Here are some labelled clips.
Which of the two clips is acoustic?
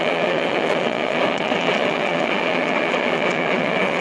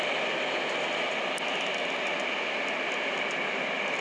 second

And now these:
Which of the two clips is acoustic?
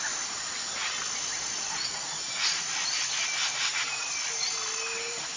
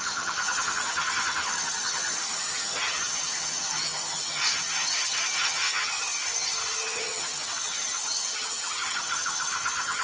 first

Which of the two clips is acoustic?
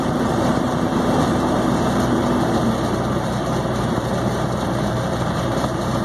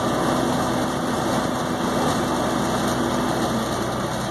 second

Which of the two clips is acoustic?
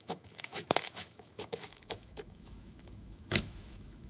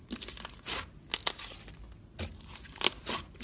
second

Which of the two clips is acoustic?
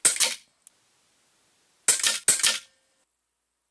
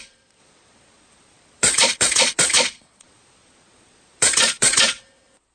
first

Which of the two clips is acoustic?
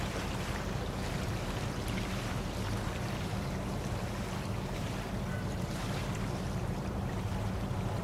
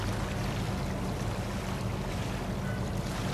second